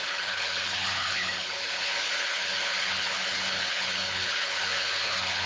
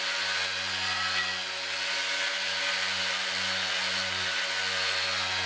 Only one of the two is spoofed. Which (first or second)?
first